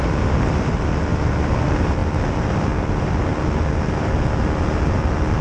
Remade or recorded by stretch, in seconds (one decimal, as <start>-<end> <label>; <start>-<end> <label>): 0.0-5.4 recorded